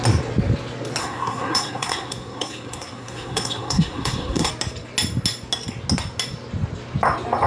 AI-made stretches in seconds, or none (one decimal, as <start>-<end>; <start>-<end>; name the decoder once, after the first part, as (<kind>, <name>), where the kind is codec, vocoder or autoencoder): 1.0-4.5 (codec, SNAC)